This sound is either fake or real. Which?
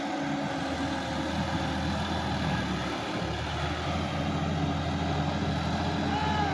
real